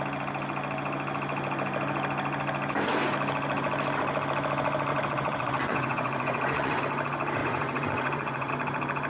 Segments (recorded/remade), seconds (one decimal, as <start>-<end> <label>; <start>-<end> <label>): 0.0-4.9 recorded; 4.9-6.8 remade; 6.8-7.4 recorded; 7.4-8.5 remade; 8.5-9.1 recorded